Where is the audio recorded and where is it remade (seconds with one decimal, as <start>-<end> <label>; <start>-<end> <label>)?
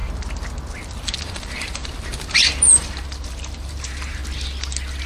0.0-1.1 recorded; 1.1-4.2 remade; 4.2-5.1 recorded